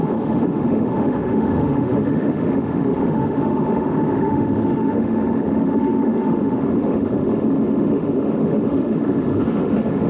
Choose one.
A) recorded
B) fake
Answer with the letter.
B